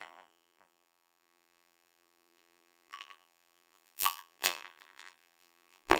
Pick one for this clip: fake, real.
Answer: fake